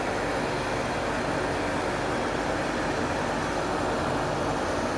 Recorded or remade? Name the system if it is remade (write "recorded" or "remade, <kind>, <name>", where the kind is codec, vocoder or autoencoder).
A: recorded